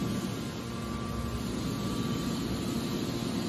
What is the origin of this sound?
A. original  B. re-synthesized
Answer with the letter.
A